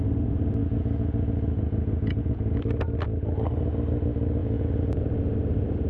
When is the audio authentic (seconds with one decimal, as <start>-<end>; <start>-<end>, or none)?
0.0-0.6; 2.6-4.4; 4.9-5.9